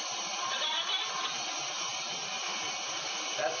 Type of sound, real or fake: real